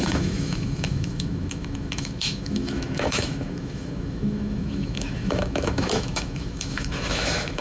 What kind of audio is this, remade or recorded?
remade